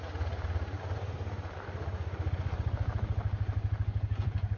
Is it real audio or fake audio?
real